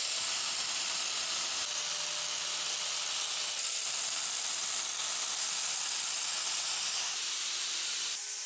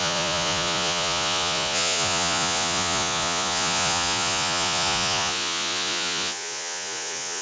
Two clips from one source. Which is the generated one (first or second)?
second